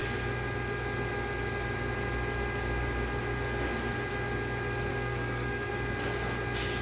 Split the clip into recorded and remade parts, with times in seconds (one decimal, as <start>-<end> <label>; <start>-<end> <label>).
0.0-4.9 recorded; 4.9-5.7 remade; 5.7-6.8 recorded